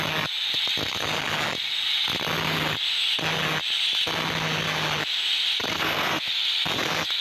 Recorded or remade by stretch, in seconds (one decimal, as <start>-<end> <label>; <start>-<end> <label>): 0.0-5.7 recorded; 5.7-6.3 remade; 6.3-7.2 recorded